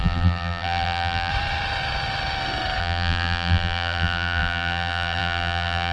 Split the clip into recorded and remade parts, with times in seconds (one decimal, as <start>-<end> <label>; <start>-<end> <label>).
0.0-1.3 remade; 1.3-2.8 recorded; 2.8-5.9 remade